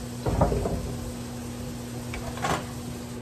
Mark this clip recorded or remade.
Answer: recorded